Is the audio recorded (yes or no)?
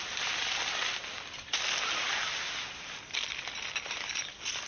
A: yes